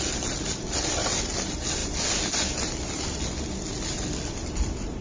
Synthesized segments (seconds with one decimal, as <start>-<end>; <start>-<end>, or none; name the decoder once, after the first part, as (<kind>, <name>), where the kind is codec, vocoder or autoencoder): none